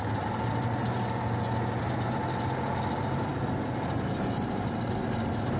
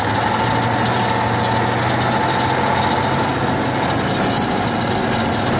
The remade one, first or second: first